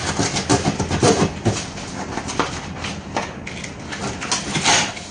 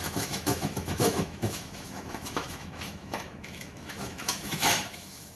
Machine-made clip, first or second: second